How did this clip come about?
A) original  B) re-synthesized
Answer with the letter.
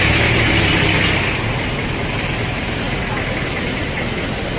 A